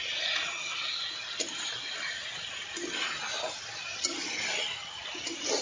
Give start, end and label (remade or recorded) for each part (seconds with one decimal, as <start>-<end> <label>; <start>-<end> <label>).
0.0-5.6 recorded

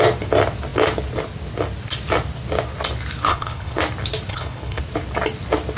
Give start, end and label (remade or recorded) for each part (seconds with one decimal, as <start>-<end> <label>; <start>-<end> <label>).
0.0-3.3 recorded; 3.3-3.8 remade; 3.8-4.3 recorded; 4.3-4.8 remade; 4.8-5.8 recorded

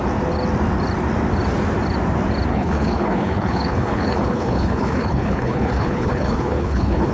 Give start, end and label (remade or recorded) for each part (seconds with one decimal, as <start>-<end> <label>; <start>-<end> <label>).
0.0-2.5 recorded; 2.5-7.1 remade

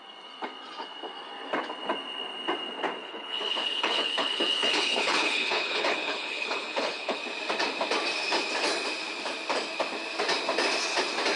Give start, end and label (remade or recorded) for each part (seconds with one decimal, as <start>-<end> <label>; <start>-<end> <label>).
0.0-3.0 recorded; 3.0-7.2 remade; 7.2-11.4 recorded